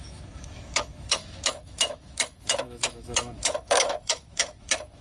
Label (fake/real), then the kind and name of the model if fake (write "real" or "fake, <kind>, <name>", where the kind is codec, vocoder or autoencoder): fake, autoencoder, DAC-VAE